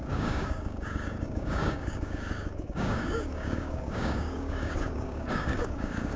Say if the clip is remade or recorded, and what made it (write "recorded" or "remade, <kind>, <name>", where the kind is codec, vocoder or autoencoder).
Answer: remade, codec, DAC